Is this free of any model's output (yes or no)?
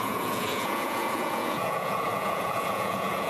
no